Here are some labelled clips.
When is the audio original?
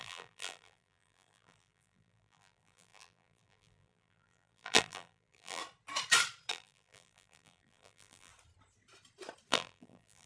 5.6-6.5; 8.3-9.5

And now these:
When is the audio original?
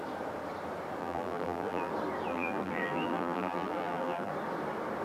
0.0-1.0; 1.9-2.3; 4.3-5.0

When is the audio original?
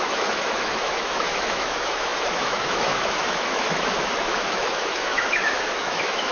none